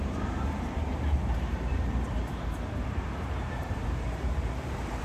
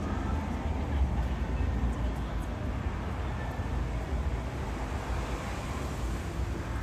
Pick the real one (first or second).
second